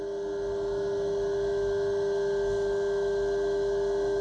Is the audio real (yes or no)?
yes